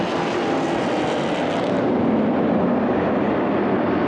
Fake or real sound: real